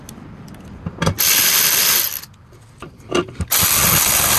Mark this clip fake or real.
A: real